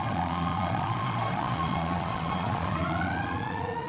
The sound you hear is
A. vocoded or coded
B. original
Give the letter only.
A